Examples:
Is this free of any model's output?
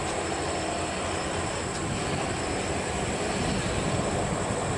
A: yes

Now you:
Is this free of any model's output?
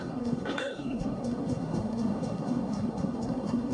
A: no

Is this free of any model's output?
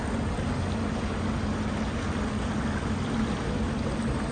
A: yes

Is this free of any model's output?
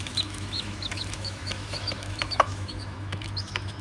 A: no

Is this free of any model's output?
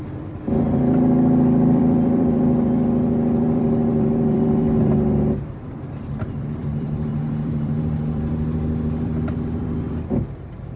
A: no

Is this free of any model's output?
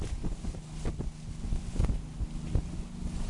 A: yes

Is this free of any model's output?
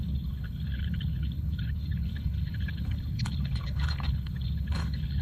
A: no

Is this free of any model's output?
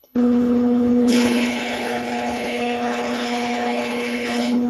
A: no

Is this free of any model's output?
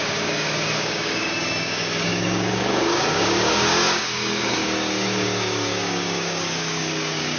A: no